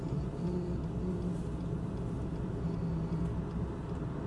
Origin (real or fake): real